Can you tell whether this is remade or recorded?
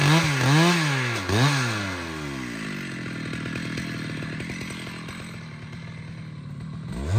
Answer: recorded